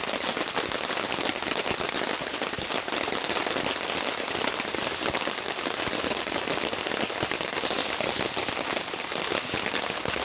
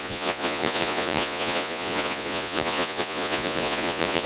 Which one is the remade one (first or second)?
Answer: second